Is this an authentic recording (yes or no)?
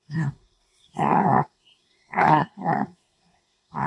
no